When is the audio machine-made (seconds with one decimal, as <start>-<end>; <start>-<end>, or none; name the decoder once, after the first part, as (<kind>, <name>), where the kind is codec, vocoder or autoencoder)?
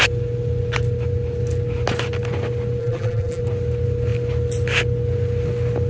2.8-3.4 (vocoder, BigVGAN v2)